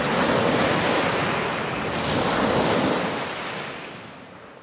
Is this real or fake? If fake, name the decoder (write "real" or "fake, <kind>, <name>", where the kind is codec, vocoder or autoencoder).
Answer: real